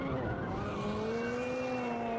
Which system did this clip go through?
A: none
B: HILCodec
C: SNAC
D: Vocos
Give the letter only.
A